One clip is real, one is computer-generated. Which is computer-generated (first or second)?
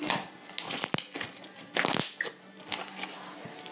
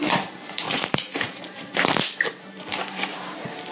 second